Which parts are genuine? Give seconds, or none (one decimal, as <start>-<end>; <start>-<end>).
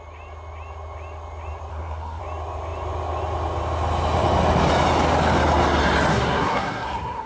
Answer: 0.0-1.7; 2.2-6.1